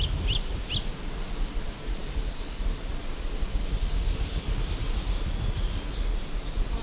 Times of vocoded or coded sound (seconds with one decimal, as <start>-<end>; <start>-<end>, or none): 2.0-2.6